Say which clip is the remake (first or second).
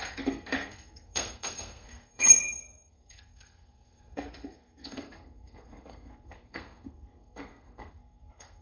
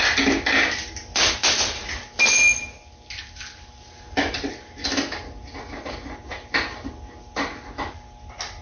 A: first